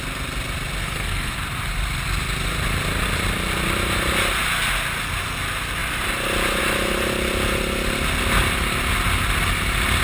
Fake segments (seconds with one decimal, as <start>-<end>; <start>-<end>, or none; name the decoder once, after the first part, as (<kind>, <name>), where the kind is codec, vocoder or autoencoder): 0.8-1.3 (codec, SNAC)

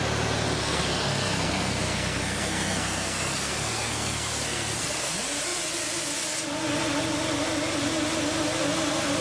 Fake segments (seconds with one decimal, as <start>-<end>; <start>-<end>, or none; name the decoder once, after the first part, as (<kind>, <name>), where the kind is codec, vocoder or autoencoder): 0.6-5.1 (codec, SNAC)

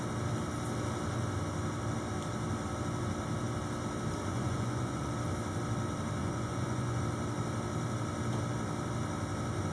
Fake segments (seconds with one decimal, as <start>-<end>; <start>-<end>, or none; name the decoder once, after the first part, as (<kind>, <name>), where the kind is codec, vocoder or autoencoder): 4.3-5.1 (vocoder, Vocos); 6.2-7.0

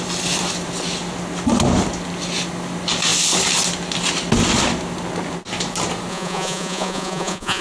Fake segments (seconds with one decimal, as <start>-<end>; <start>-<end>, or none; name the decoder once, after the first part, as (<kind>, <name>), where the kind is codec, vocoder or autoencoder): 6.1-7.6 (vocoder, Vocos)

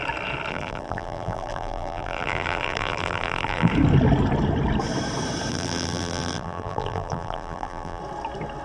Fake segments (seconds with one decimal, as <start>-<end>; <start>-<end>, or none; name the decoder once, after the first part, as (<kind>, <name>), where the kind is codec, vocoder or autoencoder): 0.5-3.7 (vocoder, BigVGAN v2); 5.5-8.0

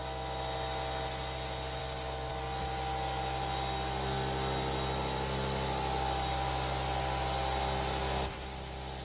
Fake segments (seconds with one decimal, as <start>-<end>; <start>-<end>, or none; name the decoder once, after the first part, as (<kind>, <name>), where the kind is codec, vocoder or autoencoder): 1.8-2.3 (codec, DAC)

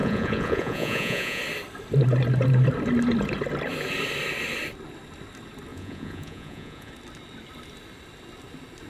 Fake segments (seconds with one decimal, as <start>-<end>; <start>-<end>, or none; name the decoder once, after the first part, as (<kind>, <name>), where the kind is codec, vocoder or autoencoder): 0.0-1.4 (vocoder, Vocos); 5.7-6.9